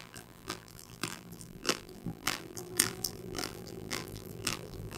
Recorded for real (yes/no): no